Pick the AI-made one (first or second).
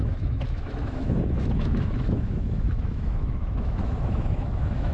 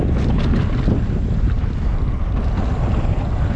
first